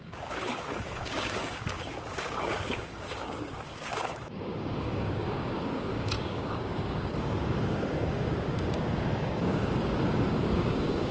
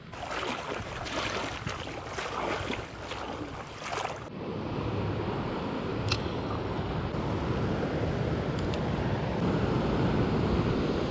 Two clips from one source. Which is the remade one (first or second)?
first